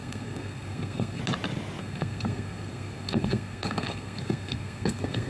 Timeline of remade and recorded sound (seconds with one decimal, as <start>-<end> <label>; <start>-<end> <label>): 0.0-1.2 remade; 1.2-1.8 recorded; 1.8-5.3 remade